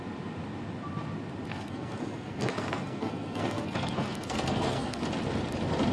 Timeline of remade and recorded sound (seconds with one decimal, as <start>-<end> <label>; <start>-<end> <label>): 0.0-1.5 recorded; 1.5-5.0 remade; 5.0-5.9 recorded